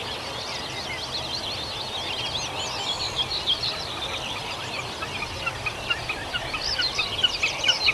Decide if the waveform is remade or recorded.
recorded